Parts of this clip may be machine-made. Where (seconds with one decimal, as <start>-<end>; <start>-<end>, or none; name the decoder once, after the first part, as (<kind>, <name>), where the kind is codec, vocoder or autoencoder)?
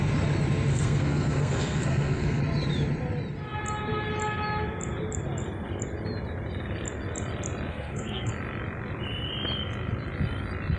0.7-2.4 (codec, SNAC); 7.7-8.3